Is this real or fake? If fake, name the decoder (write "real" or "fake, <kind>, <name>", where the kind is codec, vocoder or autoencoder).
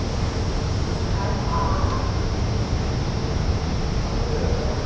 real